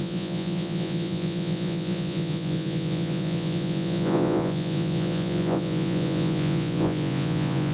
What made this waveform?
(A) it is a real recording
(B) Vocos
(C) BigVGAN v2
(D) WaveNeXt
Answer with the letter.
B